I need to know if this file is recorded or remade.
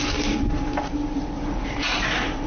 remade